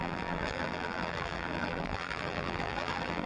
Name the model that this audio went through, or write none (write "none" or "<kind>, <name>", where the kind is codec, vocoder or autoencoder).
vocoder, BigVGAN v2